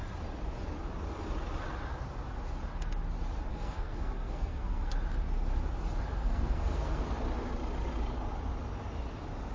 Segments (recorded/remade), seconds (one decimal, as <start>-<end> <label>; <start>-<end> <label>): 0.0-3.5 recorded; 3.5-4.9 remade; 4.9-6.2 recorded; 6.2-7.0 remade; 7.0-9.5 recorded

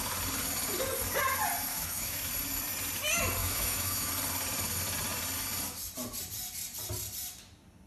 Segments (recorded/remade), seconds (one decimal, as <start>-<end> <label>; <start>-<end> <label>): 0.0-1.7 recorded; 1.7-2.3 remade; 2.3-3.4 recorded; 3.4-4.1 remade; 4.1-7.9 recorded

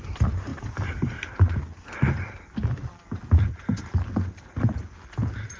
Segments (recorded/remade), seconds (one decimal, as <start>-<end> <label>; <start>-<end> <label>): 0.0-5.6 recorded